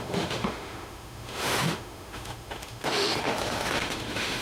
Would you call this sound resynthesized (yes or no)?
yes